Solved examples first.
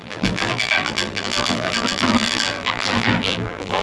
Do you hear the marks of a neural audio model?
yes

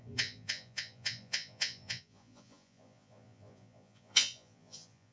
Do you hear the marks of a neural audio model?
yes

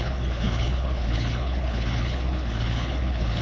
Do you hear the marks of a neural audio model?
yes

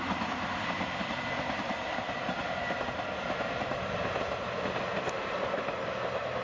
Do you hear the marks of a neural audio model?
yes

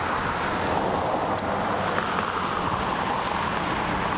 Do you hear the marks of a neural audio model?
no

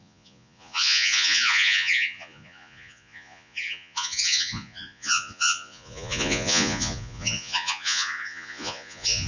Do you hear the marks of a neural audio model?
yes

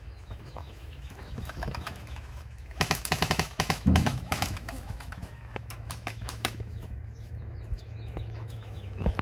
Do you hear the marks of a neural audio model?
yes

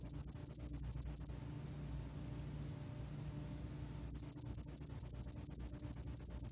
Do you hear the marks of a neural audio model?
no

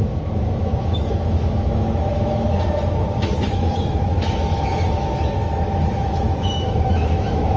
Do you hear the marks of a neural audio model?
yes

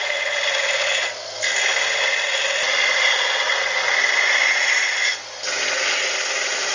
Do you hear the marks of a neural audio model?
no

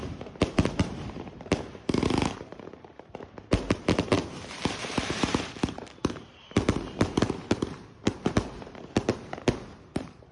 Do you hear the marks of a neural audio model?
yes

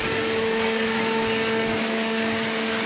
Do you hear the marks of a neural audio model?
yes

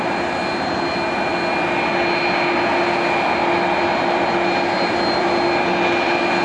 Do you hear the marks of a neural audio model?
no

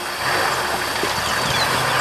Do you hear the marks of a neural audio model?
no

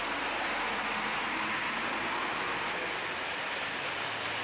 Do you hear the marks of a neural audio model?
no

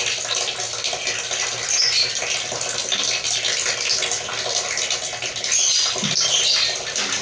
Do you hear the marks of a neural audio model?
no